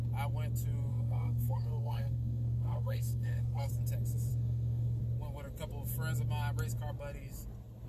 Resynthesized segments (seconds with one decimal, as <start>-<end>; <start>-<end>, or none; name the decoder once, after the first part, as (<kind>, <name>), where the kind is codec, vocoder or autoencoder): 0.9-3.7 (codec, SNAC); 4.3-5.0